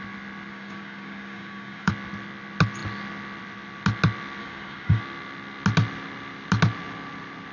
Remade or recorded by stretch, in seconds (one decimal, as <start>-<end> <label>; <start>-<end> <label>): 0.0-0.5 recorded; 0.5-1.9 remade; 1.9-4.4 recorded; 4.4-5.0 remade; 5.0-7.5 recorded